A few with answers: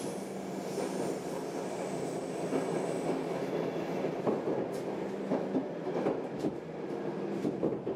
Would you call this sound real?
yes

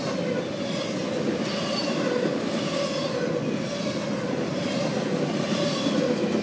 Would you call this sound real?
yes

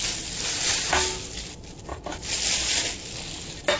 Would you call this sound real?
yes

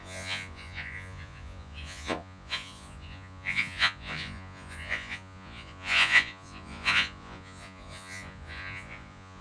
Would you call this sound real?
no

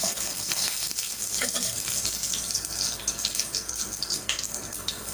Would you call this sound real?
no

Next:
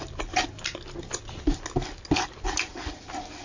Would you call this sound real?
yes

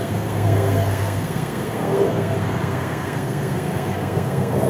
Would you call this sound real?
no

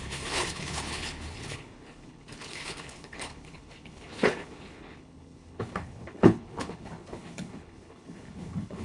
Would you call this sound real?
no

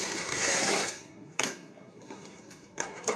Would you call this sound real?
no